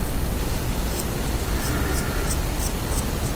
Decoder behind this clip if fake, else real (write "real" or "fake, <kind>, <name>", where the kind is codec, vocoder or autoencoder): real